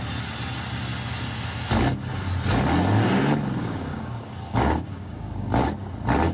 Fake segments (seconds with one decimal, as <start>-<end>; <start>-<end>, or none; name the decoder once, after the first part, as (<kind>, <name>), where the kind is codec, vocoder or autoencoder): 3.6-5.7 (codec, DAC)

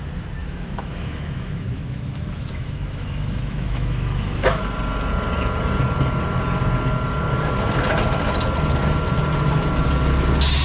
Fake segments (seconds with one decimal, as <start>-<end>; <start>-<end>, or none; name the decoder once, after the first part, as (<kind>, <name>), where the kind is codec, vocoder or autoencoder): 0.4-4.6 (autoencoder, DAC-VAE)

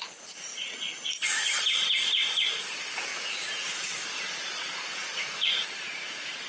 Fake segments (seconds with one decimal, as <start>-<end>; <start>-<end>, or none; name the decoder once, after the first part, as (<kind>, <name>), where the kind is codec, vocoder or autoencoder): 0.5-1.6 (vocoder, BigVGAN v2)

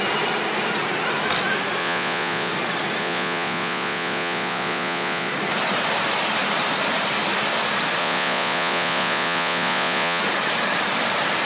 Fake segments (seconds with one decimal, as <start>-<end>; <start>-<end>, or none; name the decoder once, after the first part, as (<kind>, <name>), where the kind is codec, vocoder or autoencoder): 1.8-2.5 (vocoder, Vocos); 3.0-5.3; 8.0-10.2

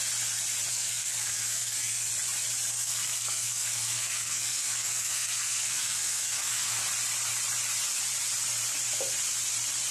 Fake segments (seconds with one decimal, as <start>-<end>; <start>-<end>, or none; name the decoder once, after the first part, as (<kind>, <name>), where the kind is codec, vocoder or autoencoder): 0.7-2.1 (codec, SNAC); 2.7-6.8

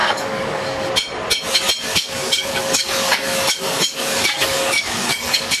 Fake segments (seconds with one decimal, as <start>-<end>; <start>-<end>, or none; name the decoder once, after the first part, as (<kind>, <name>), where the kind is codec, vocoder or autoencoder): 0.0-0.9 (codec, DAC); 1.9-5.6

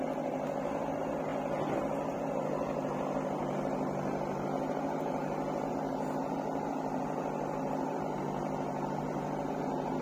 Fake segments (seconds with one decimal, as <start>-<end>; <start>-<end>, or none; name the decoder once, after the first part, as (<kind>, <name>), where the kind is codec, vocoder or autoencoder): none

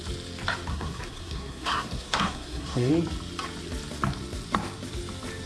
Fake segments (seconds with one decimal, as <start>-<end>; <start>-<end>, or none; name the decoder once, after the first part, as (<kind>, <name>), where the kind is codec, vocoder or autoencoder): 0.7-2.9 (codec, SNAC)